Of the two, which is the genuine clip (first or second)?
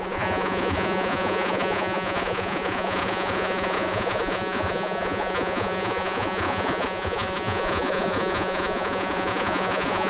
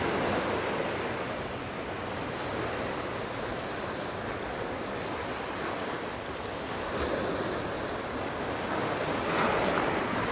second